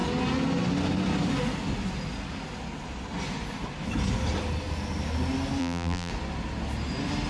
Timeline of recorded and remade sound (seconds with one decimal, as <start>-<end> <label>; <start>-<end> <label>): 0.0-5.6 recorded; 5.6-6.1 remade; 6.1-7.3 recorded